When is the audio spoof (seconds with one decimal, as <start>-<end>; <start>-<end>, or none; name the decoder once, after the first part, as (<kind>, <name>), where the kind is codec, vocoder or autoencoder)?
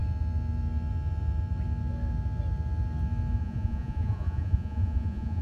3.4-5.4 (vocoder, Vocos)